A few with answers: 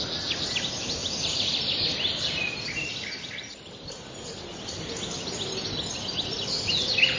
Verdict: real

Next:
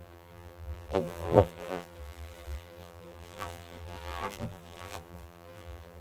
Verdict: fake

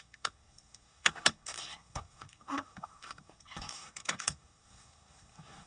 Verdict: fake